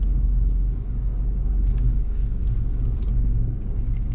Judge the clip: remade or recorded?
remade